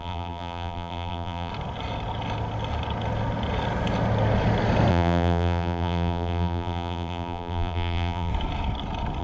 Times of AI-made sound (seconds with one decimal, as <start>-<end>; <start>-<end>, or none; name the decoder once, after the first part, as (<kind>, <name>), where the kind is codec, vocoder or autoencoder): 0.0-1.5 (vocoder, BigVGAN v2); 4.9-8.3